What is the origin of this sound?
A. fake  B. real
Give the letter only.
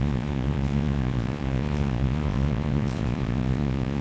A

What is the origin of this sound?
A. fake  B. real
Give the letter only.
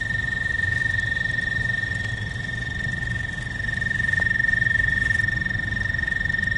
A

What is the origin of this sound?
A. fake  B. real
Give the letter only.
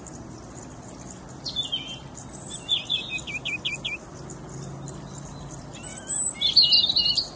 B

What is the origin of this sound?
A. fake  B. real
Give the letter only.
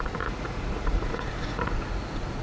A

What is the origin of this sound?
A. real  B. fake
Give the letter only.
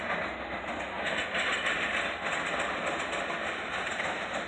A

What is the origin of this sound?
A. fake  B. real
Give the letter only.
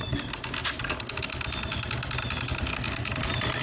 B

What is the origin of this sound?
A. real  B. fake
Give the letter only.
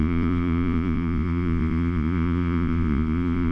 B